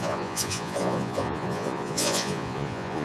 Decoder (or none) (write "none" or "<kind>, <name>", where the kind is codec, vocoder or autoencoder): vocoder, Vocos